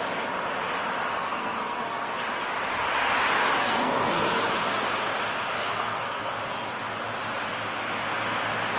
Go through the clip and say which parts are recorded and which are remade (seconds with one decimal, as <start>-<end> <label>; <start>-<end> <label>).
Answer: 0.0-1.1 recorded; 1.1-2.3 remade; 2.3-3.6 recorded; 3.6-4.4 remade; 4.4-5.7 recorded; 5.7-6.4 remade; 6.4-8.8 recorded